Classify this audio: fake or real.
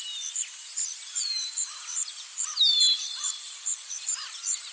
fake